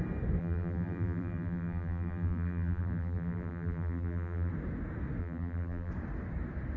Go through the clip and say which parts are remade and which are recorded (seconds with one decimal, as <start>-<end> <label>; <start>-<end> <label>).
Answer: 0.0-0.4 recorded; 0.4-4.5 remade; 4.5-5.2 recorded; 5.2-5.9 remade; 5.9-6.8 recorded